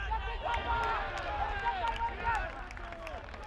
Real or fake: real